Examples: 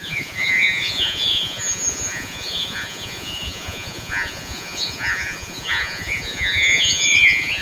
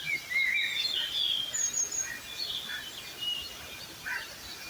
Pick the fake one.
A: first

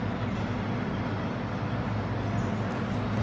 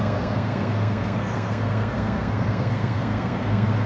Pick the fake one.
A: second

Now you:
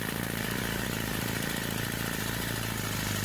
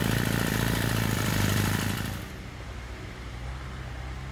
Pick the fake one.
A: second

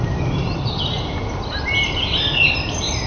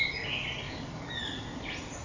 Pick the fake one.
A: first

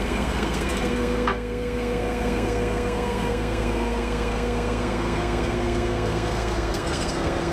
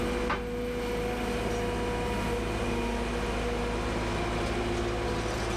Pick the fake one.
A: first